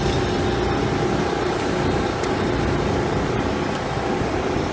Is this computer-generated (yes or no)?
no